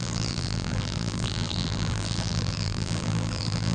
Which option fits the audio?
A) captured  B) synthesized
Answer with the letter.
B